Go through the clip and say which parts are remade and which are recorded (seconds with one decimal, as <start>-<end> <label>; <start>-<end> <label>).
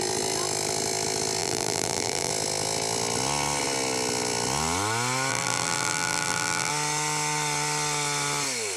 0.0-1.4 recorded; 1.4-2.3 remade; 2.3-5.3 recorded; 5.3-6.7 remade; 6.7-8.8 recorded